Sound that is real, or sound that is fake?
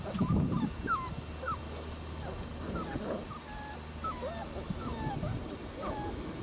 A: real